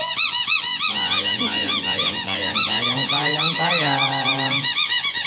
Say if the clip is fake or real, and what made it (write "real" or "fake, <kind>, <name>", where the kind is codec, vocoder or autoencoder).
fake, vocoder, Vocos